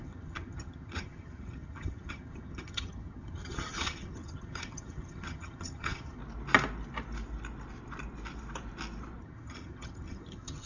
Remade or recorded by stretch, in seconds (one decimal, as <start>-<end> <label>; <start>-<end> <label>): 0.0-6.2 remade; 6.2-9.2 recorded; 9.2-10.7 remade